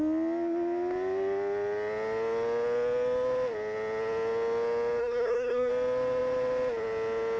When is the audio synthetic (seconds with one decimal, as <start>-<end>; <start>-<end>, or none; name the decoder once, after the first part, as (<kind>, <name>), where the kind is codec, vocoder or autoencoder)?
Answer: 5.0-5.7 (codec, SNAC)